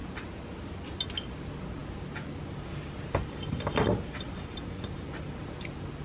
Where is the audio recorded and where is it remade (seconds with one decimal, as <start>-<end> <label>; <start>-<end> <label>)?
0.0-6.0 recorded